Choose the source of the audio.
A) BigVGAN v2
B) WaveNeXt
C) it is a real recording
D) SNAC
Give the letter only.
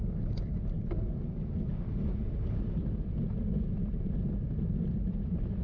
C